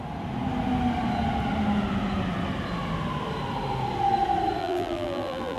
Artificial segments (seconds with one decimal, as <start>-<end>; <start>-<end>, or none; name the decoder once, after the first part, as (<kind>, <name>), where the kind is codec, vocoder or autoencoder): 4.6-5.6 (vocoder, BigVGAN v2)